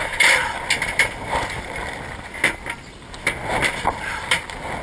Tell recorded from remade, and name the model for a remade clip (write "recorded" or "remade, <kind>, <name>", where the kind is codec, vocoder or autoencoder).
recorded